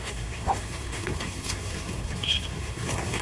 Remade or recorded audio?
remade